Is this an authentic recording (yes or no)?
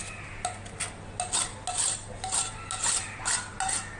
yes